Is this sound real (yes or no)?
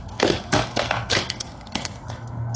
no